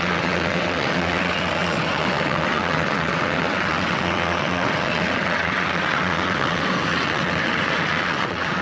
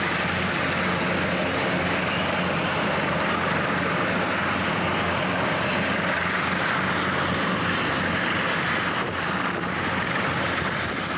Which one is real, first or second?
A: second